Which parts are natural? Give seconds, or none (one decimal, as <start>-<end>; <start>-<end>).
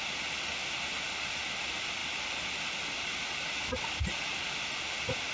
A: 0.0-5.3